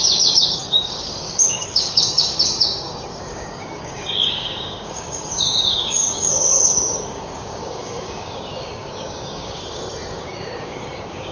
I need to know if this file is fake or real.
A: fake